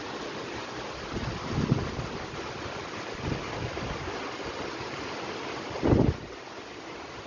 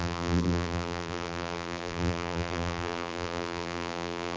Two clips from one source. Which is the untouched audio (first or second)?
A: first